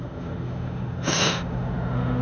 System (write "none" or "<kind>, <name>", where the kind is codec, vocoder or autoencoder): autoencoder, DAC-VAE